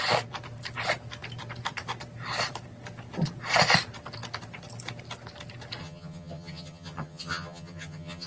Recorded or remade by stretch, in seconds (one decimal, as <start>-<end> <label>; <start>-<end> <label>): 0.0-5.8 recorded; 5.8-8.3 remade